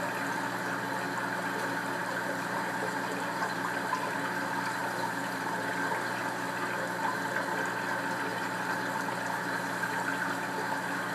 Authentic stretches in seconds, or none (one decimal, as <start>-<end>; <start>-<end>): 0.0-2.0; 4.1-4.8; 5.7-8.3; 9.6-11.1